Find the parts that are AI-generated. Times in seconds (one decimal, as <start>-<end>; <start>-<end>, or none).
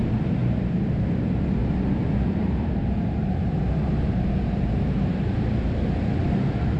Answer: 0.4-1.0; 1.6-5.7